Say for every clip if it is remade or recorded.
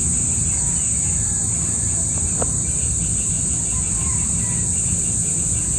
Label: recorded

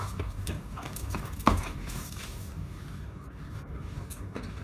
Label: remade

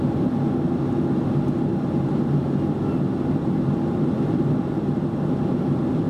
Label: recorded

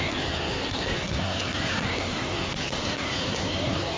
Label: remade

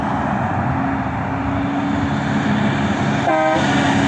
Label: recorded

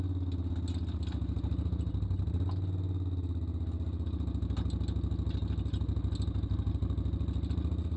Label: recorded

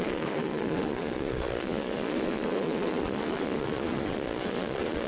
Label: remade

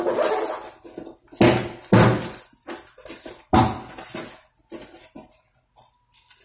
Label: recorded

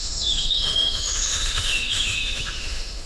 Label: remade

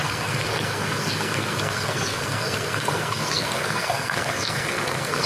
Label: remade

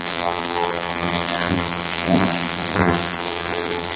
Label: remade